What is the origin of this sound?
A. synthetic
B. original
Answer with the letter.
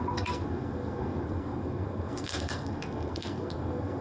A